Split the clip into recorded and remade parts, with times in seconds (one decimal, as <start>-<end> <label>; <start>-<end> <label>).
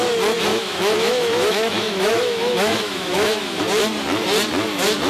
0.0-0.5 recorded; 0.5-3.6 remade; 3.6-5.1 recorded